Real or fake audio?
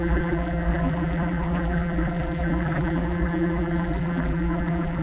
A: fake